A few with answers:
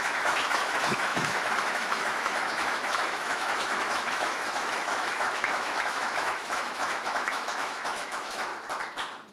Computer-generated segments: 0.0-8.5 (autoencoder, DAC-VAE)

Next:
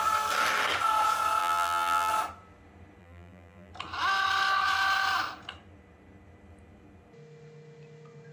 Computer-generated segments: 1.4-2.1 (vocoder, BigVGAN v2); 3.0-3.7

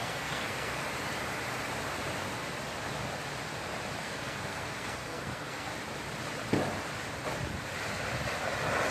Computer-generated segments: 0.0-0.8 (codec, SNAC); 4.0-5.7

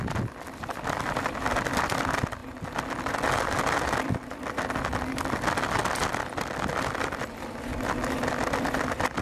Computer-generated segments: none

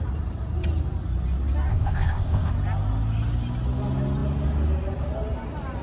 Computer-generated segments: 1.7-2.5 (codec, ZipCodec)

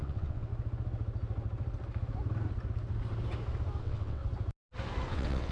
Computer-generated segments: 0.0-0.5 (vocoder, WaveNeXt); 3.8-4.2; 5.1-5.5

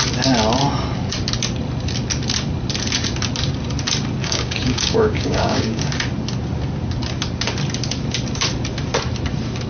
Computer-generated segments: 4.2-5.8 (codec, DAC)